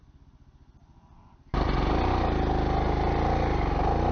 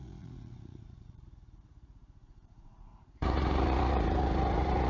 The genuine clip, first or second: first